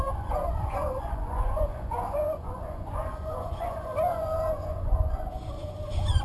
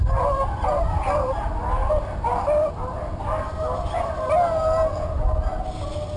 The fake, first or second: first